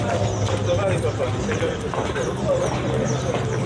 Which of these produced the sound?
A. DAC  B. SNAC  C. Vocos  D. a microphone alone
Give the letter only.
D